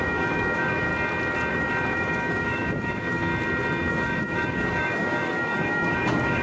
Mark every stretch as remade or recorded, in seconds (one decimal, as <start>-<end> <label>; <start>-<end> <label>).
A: 0.0-0.9 remade; 0.9-1.5 recorded; 1.5-3.3 remade; 3.3-3.9 recorded; 3.9-6.4 remade

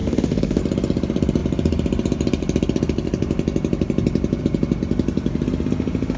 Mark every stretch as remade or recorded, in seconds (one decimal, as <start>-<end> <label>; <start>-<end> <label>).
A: 0.0-0.6 remade; 0.6-6.2 recorded

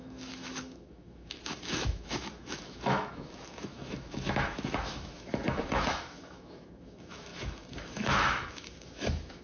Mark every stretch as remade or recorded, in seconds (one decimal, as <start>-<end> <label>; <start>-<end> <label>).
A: 0.0-9.4 remade

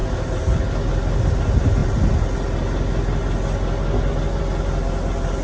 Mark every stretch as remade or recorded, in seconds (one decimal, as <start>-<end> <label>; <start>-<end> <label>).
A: 0.0-5.4 recorded

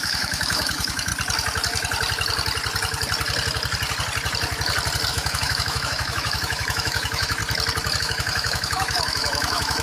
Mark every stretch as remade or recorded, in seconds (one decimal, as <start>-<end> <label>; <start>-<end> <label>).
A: 0.0-1.1 remade; 1.1-5.1 recorded; 5.1-7.4 remade; 7.4-8.0 recorded; 8.0-9.8 remade